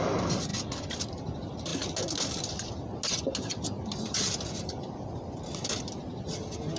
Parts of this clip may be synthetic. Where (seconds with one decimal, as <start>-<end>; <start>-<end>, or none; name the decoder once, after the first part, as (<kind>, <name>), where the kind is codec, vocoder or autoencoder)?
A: none